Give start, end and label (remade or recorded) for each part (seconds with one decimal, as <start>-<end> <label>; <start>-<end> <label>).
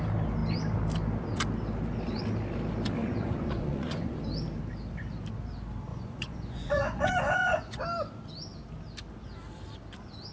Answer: 0.0-3.0 recorded; 3.0-4.2 remade; 4.2-5.9 recorded; 5.9-7.8 remade; 7.8-10.3 recorded